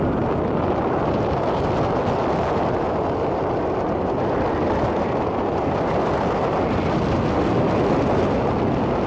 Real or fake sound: real